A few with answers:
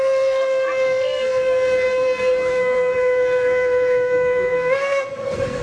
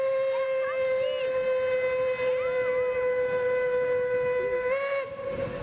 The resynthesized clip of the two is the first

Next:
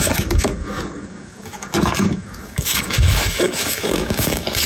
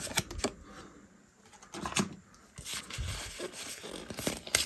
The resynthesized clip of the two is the first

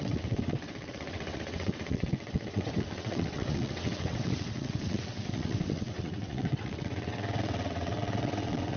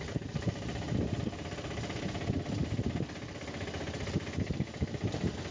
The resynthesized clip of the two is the first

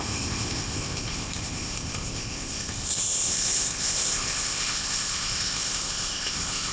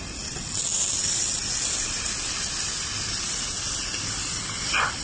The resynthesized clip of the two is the first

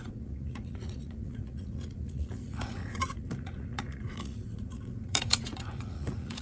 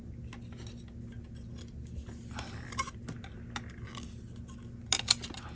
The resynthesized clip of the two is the first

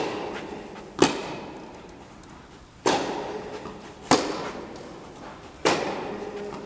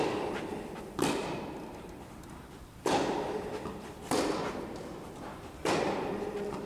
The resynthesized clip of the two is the second